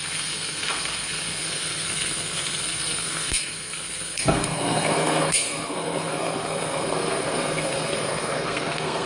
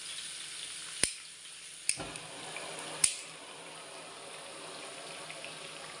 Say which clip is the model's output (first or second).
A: first